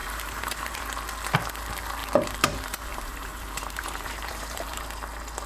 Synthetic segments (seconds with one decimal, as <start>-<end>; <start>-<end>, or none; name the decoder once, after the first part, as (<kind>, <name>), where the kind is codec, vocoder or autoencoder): 0.0-0.8 (vocoder, BigVGAN v2); 2.0-4.8